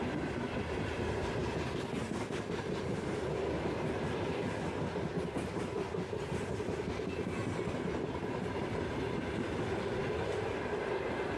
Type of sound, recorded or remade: recorded